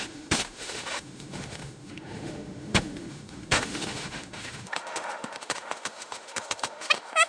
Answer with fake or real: fake